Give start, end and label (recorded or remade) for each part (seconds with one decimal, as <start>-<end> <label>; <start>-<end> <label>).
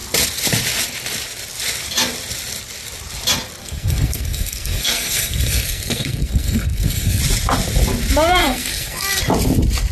0.0-3.6 recorded; 3.6-7.2 remade; 7.2-8.4 recorded; 8.4-9.2 remade; 9.2-9.9 recorded